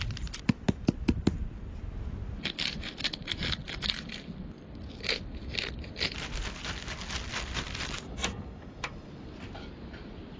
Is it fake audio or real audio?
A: real